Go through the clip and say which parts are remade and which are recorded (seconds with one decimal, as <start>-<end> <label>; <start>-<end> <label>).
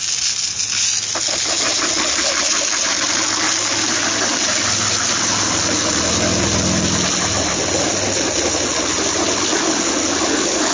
0.0-10.7 recorded